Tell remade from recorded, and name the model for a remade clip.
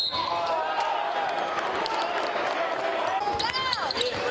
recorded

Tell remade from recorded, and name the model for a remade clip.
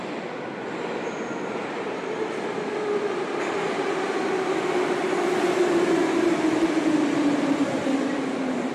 recorded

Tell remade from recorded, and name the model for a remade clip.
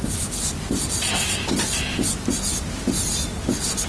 recorded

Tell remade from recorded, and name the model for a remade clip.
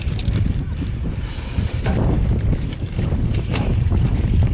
remade, vocoder, BigVGAN v2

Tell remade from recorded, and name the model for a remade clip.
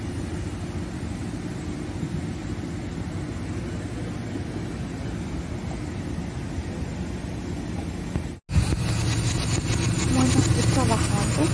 recorded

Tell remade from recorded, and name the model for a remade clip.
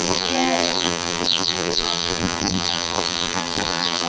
remade, vocoder, BigVGAN v2